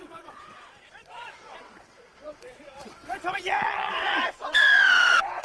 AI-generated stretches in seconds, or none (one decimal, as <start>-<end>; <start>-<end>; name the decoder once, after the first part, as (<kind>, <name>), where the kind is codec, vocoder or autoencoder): 0.0-5.4 (vocoder, WaveNeXt)